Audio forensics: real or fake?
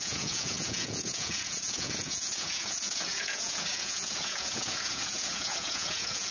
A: fake